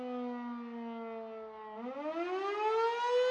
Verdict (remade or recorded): recorded